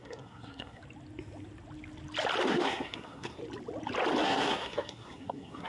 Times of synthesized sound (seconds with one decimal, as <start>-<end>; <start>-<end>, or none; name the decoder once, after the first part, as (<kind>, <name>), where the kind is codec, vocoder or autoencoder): 0.0-0.8 (codec, SNAC); 2.5-3.4; 4.2-5.7